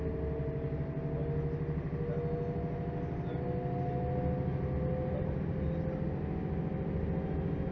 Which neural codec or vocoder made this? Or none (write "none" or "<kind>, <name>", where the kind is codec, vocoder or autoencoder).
none